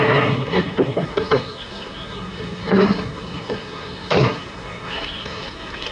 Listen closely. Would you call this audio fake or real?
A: fake